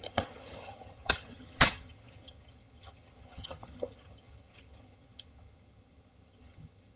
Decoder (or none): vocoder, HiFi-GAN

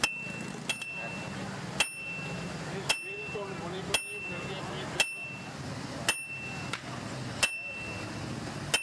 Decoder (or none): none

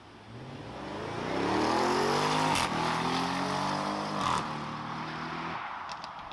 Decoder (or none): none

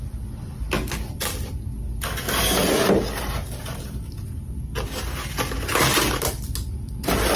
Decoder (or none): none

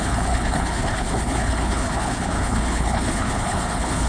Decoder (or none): codec, HILCodec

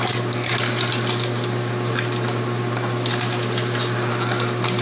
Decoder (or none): none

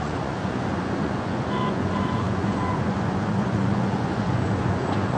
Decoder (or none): vocoder, Vocos